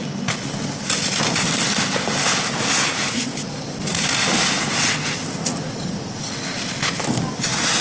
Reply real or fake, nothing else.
real